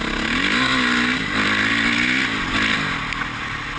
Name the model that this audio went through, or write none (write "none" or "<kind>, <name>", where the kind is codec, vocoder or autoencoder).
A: none